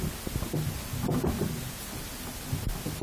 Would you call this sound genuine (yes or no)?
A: yes